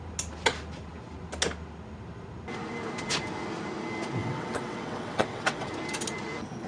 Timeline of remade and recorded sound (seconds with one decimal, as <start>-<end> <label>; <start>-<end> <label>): 0.0-4.2 recorded; 4.2-5.7 remade; 5.7-6.7 recorded